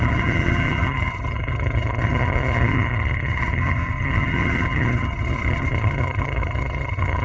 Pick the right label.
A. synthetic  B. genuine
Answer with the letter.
A